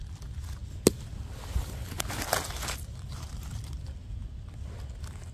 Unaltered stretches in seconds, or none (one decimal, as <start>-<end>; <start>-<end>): 0.0-5.3